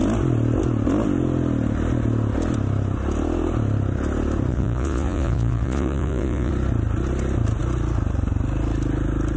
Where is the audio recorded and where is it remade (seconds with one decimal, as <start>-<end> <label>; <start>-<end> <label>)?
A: 0.0-4.5 recorded; 4.5-6.5 remade; 6.5-9.4 recorded